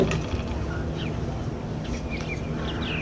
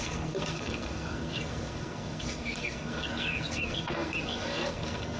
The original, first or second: first